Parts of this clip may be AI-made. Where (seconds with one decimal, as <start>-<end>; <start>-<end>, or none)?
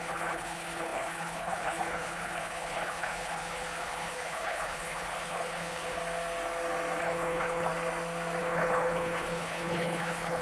0.0-6.0; 7.0-7.7; 8.4-10.4